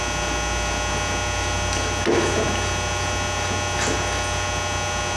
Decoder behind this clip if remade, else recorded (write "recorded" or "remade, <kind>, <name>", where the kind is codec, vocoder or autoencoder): recorded